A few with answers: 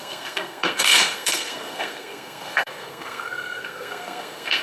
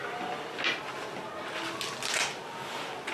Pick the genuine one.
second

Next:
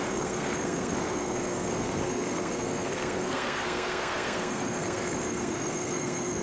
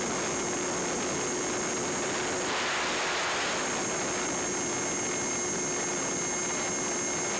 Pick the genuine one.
second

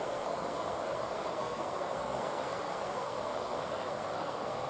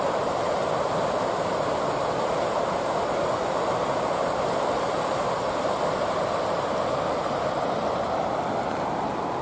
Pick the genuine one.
second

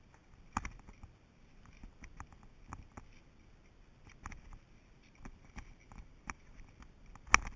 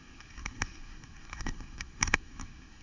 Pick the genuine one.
first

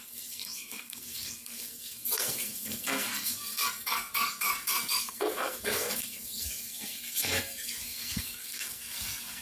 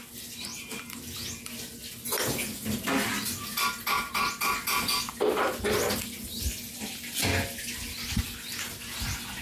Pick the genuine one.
second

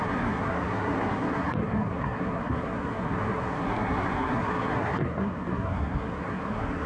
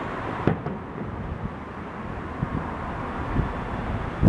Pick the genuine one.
second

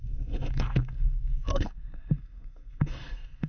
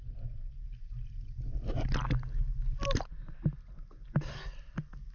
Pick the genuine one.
second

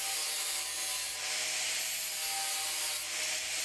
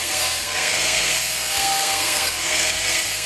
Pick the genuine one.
first